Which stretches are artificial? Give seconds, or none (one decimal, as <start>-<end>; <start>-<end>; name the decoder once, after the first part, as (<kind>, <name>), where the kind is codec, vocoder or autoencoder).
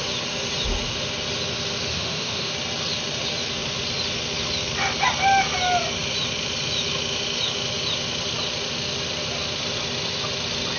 1.9-2.5 (autoencoder, DAC-VAE)